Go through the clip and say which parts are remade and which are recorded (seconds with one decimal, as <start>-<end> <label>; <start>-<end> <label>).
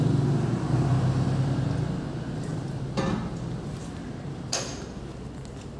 0.0-2.5 recorded; 2.5-5.0 remade; 5.0-5.8 recorded